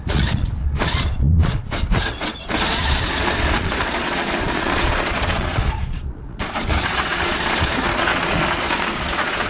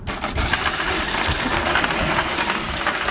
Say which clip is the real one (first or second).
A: second